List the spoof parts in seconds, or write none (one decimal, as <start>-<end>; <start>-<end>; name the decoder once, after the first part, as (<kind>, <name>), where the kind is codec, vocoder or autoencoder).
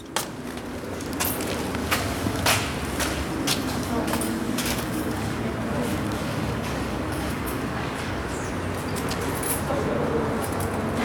1.8-2.4 (codec, DAC); 3.6-5.4; 5.9-8.2